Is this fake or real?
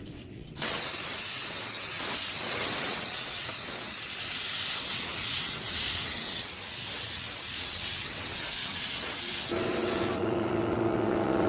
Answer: fake